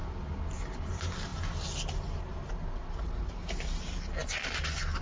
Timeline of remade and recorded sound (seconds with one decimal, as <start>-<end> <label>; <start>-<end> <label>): 0.0-5.0 recorded